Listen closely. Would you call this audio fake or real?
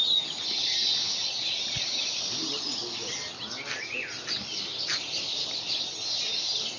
real